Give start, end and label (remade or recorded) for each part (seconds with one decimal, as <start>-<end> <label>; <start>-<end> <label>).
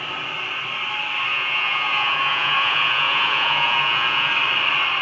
0.0-1.3 recorded; 1.3-4.3 remade; 4.3-5.0 recorded